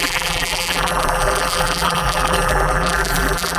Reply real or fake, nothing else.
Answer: fake